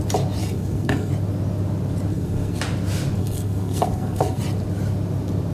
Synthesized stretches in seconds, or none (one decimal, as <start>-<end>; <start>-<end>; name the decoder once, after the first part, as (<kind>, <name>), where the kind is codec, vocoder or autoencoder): 0.4-1.1 (codec, SNAC); 2.1-2.6; 3.2-4.4